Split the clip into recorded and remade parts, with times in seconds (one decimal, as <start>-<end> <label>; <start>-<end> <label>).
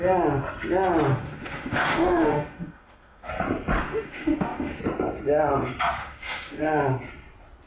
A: 0.0-1.1 recorded; 1.1-3.3 remade; 3.3-3.8 recorded; 3.8-4.8 remade; 4.8-6.0 recorded; 6.0-6.6 remade; 6.6-7.7 recorded